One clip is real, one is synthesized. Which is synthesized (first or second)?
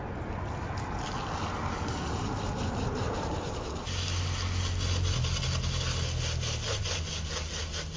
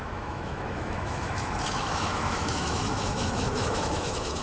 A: second